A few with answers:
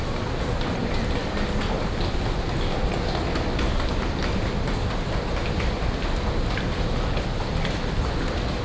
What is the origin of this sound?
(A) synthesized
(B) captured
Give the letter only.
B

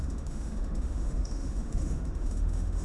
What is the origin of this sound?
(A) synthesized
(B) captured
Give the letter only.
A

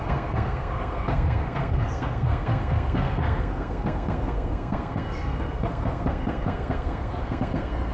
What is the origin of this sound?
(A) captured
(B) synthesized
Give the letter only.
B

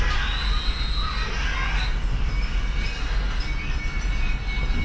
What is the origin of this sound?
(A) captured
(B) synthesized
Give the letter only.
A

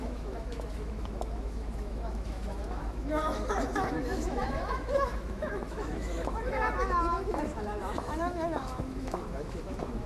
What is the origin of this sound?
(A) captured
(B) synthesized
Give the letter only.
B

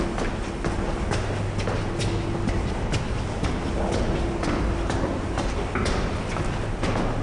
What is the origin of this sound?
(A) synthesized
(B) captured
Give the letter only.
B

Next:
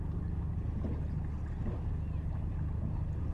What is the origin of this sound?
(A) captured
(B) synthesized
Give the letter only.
A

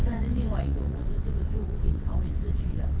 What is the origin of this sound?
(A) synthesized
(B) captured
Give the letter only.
A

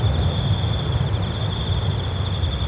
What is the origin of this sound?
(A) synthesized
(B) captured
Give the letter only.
B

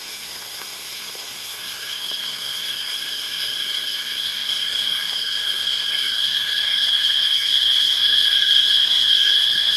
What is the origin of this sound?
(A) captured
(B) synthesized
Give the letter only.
B